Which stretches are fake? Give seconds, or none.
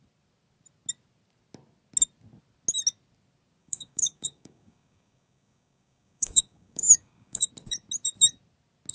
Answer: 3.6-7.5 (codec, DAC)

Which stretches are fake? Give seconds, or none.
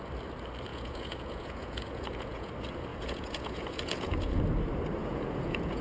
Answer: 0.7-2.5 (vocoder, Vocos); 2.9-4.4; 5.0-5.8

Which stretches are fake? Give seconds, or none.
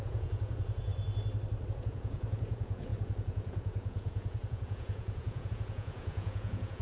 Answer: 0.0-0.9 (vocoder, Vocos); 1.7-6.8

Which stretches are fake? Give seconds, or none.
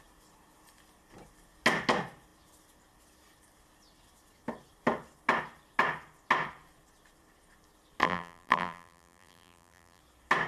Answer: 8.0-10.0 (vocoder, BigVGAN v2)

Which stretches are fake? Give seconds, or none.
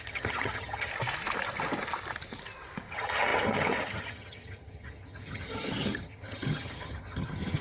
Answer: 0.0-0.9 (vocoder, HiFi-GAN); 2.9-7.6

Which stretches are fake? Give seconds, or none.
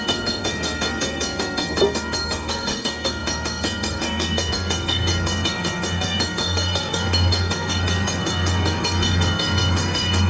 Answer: 0.0-10.3 (codec, SNAC)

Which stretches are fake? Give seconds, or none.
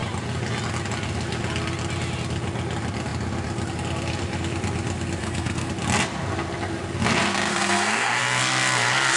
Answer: 5.2-5.7 (codec, SNAC); 7.5-8.2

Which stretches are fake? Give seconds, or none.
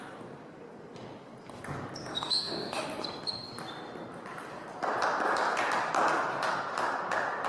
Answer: 2.0-2.8 (autoencoder, DAC-VAE)